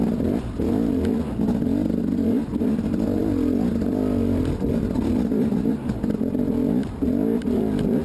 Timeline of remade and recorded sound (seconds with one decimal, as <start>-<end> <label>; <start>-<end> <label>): 0.0-3.2 recorded; 3.2-5.4 remade; 5.4-8.0 recorded

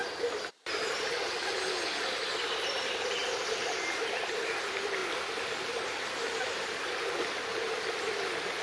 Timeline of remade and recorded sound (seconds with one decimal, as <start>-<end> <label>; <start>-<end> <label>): 0.0-3.2 recorded; 3.2-4.4 remade; 4.4-8.6 recorded

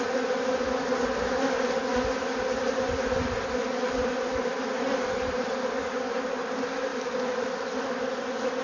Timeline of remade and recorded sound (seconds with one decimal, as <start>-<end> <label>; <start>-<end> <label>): 0.0-6.9 recorded; 6.9-8.2 remade; 8.2-8.6 recorded

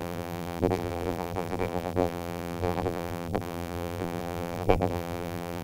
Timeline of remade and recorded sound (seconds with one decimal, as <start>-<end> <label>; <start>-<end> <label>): 0.0-5.6 remade

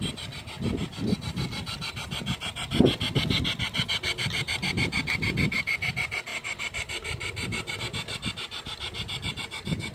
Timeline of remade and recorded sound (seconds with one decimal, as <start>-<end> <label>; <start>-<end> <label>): 0.0-6.3 recorded; 6.3-7.8 remade; 7.8-9.9 recorded

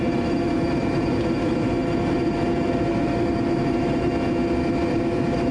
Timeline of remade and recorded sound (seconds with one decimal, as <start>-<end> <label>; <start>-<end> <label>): 0.0-4.1 remade; 4.1-4.9 recorded; 4.9-5.5 remade